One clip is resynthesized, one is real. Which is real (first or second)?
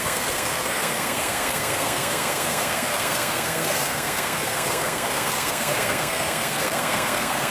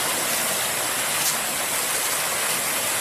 second